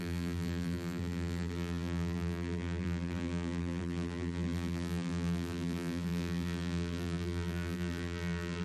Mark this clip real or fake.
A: fake